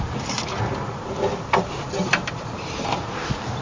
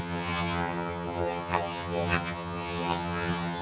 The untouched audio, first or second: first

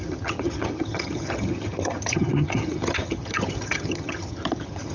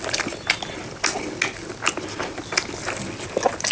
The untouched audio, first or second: second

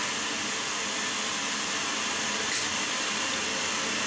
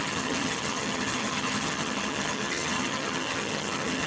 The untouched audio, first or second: first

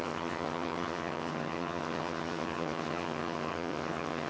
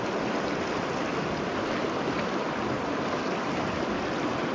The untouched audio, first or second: second